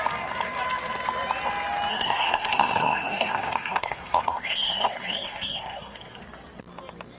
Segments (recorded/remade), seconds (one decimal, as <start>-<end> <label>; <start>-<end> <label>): 0.0-1.9 recorded; 1.9-6.2 remade; 6.2-7.2 recorded